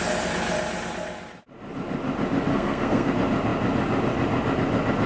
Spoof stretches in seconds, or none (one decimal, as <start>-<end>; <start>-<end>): 2.5-3.1